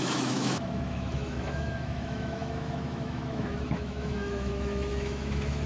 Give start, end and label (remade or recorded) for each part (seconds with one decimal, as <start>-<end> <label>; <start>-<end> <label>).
0.0-5.7 remade